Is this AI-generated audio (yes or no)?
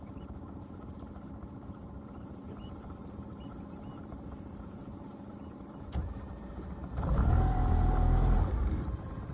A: yes